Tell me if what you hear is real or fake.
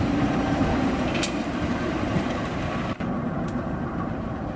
fake